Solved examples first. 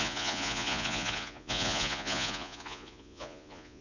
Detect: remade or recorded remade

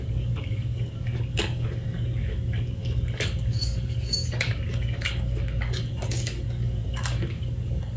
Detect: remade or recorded remade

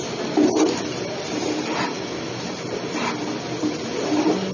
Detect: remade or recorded recorded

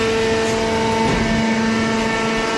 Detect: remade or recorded recorded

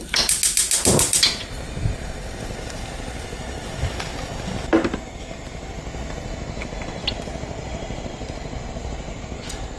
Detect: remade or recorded recorded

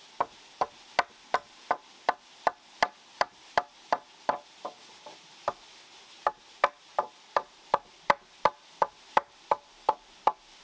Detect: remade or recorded recorded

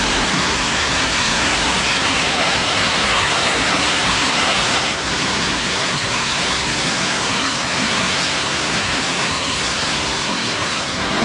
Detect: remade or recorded remade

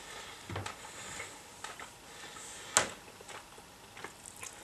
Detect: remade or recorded recorded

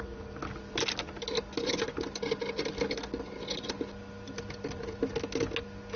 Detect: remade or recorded recorded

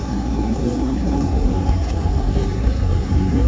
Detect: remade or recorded remade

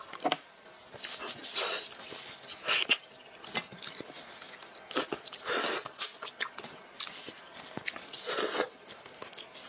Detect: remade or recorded recorded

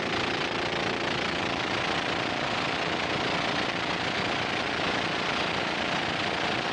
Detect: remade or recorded remade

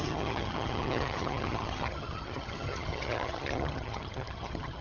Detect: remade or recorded remade